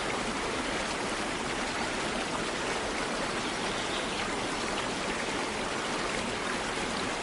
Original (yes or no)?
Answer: yes